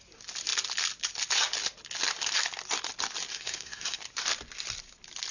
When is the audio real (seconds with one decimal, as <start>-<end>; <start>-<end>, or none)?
0.0-3.3; 4.0-5.3

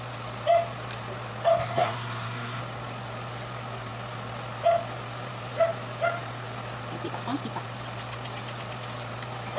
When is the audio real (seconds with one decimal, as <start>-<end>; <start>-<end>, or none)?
0.0-1.6; 2.6-9.6

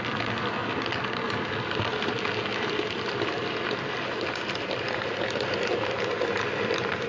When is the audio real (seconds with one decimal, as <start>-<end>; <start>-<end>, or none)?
0.0-7.1

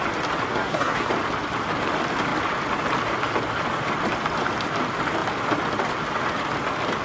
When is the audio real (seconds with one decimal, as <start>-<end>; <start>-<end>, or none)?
0.0-0.5; 1.1-7.0

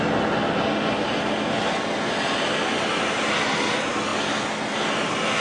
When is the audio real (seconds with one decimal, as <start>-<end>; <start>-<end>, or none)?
0.0-5.4